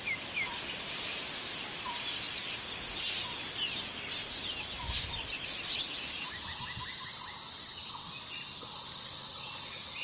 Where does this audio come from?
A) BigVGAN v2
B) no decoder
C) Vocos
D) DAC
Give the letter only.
B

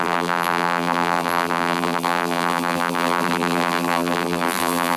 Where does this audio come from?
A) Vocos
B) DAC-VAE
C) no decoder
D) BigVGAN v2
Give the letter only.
D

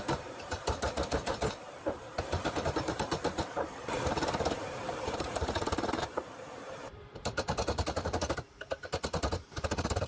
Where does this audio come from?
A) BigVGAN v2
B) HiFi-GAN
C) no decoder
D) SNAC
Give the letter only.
A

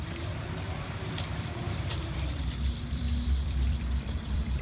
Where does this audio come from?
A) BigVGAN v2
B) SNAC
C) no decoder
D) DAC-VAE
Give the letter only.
A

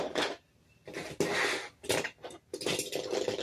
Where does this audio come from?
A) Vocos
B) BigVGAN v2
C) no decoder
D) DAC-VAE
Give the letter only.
C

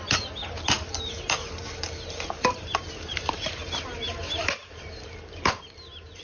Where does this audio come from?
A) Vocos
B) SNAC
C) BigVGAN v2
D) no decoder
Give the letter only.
C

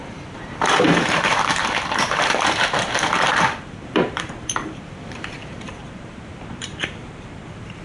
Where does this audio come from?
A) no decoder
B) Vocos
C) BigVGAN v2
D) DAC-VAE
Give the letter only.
C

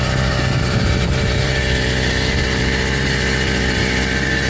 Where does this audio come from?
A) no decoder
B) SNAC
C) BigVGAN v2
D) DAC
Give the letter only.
A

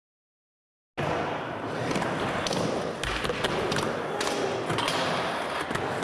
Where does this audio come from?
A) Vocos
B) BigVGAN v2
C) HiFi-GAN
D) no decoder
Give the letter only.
D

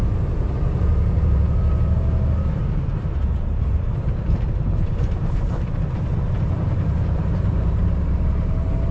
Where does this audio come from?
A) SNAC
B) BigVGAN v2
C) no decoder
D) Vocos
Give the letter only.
B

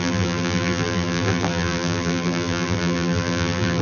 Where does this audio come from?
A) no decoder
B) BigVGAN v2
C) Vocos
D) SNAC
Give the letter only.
B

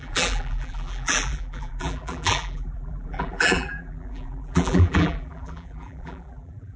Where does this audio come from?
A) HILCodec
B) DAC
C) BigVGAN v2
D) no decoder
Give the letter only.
C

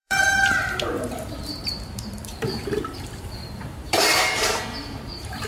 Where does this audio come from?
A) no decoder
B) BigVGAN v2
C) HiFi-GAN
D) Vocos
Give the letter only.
B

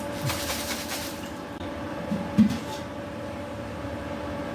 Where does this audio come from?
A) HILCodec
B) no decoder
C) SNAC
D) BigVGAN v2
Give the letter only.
D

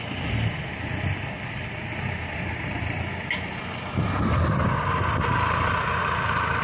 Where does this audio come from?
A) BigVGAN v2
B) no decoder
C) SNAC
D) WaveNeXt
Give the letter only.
A